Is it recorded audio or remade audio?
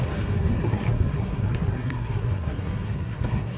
remade